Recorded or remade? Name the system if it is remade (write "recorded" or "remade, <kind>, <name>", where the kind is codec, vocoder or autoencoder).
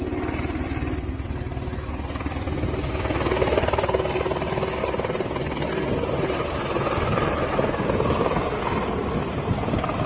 recorded